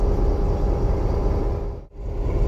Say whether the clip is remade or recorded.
recorded